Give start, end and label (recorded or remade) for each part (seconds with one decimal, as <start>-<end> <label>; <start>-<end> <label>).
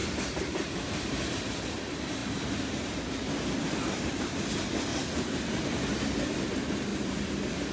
0.0-0.9 remade; 0.9-4.9 recorded; 4.9-6.5 remade; 6.5-7.7 recorded